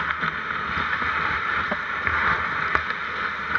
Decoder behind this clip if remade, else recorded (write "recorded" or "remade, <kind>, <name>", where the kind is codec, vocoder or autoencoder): recorded